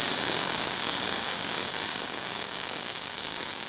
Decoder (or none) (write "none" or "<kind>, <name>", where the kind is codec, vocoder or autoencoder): codec, DAC